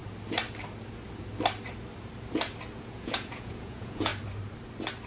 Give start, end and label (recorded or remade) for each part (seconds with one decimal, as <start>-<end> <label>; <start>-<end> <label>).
0.0-2.8 recorded; 2.8-4.1 remade; 4.1-5.1 recorded